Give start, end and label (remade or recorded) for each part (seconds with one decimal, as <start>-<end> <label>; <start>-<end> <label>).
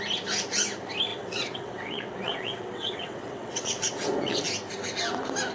0.0-1.1 recorded; 1.1-4.4 remade; 4.4-5.5 recorded